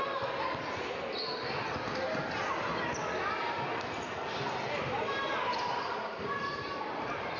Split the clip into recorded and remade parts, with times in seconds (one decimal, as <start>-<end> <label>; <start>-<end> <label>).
0.0-5.5 recorded; 5.5-6.8 remade; 6.8-7.4 recorded